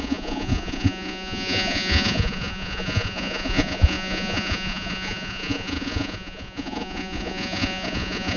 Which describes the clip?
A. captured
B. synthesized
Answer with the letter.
B